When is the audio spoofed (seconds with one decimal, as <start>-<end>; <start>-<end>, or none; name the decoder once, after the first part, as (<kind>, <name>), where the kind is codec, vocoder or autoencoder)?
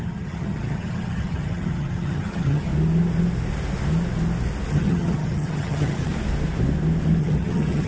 0.0-2.7 (vocoder, HiFi-GAN); 4.7-6.1; 7.2-7.9